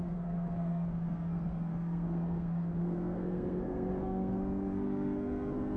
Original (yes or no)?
no